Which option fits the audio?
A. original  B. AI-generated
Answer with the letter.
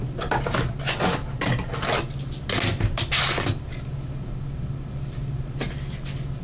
A